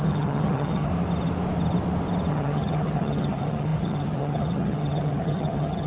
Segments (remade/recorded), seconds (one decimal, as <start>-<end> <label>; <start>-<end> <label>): 0.0-0.9 remade; 0.9-2.3 recorded; 2.3-5.9 remade